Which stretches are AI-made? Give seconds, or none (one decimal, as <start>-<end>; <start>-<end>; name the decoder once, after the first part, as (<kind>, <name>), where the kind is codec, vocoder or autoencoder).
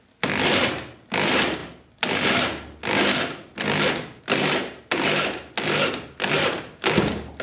none